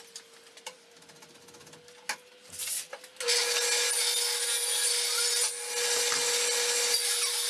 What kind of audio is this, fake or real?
real